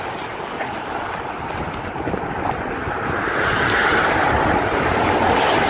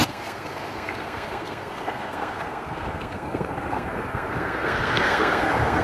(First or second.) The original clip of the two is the first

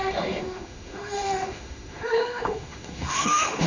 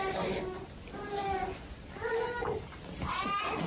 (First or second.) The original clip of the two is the second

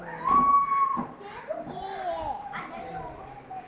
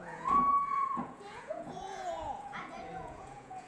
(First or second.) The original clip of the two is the first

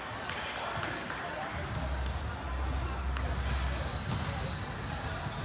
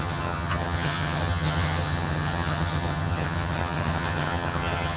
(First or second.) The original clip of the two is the first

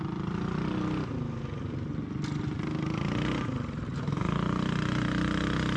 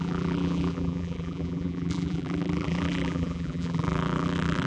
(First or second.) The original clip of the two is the first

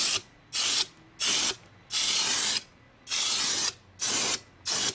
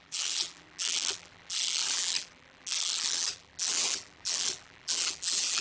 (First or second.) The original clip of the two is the first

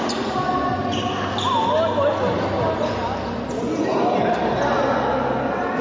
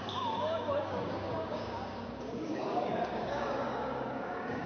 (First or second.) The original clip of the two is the first